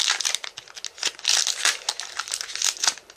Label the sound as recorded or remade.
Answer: recorded